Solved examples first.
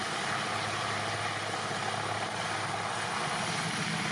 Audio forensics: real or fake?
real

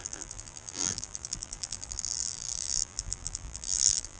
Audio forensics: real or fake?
fake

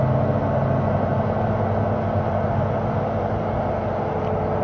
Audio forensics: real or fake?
real